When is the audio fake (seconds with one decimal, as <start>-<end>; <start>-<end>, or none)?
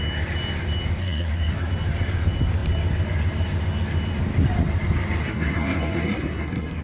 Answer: 1.0-1.7; 5.2-6.8